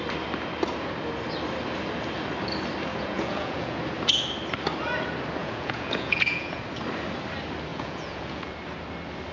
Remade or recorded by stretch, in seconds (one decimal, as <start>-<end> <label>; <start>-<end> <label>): 0.0-2.9 recorded; 2.9-3.8 remade; 3.8-5.4 recorded; 5.4-6.6 remade; 6.6-7.7 recorded; 7.7-8.5 remade; 8.5-9.3 recorded